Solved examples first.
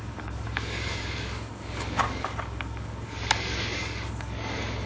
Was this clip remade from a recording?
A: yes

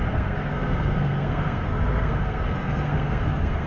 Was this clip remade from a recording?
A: yes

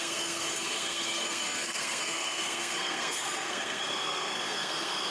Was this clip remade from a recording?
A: yes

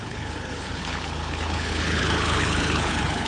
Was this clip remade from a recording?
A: yes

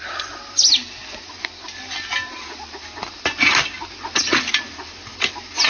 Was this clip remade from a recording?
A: no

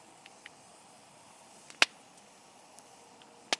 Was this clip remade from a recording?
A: no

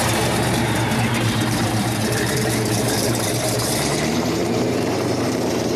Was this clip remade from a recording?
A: yes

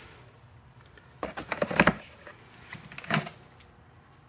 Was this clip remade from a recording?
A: no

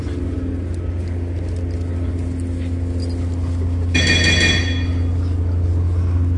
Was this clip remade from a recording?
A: no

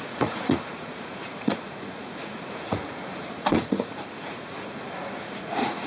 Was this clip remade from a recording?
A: yes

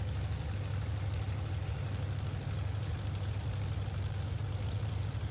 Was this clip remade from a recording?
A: no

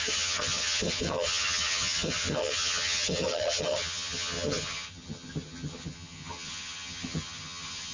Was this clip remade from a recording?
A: yes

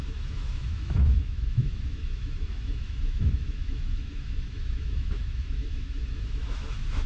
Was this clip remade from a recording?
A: yes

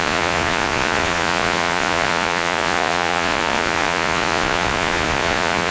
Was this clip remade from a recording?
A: yes